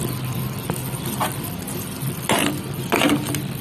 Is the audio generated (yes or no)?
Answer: no